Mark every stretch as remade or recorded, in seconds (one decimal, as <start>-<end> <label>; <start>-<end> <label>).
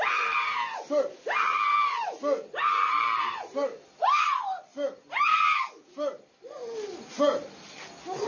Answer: 0.0-8.3 recorded